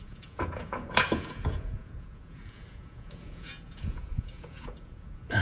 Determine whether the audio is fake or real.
fake